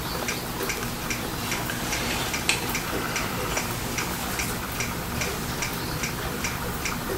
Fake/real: fake